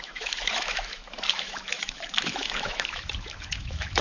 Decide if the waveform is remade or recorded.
remade